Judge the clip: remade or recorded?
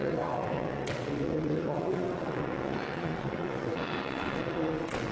remade